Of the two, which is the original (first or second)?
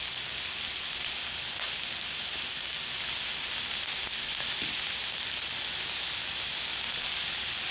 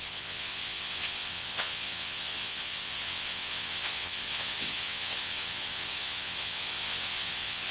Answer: first